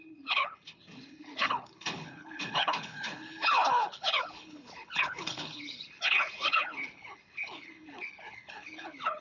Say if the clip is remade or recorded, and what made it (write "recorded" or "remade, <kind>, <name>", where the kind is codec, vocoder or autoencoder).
remade, codec, HILCodec